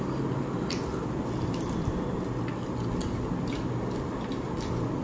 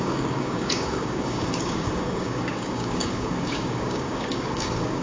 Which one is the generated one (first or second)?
second